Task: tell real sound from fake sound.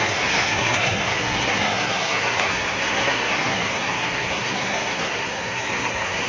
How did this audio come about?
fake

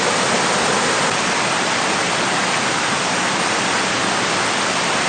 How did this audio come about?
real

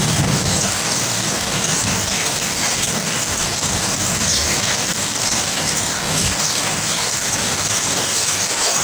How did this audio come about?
fake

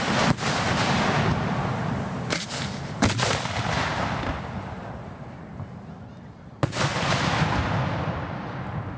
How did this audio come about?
real